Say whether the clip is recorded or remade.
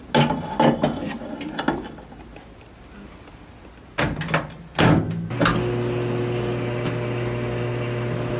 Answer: recorded